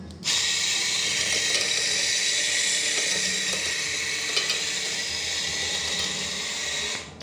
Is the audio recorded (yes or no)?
yes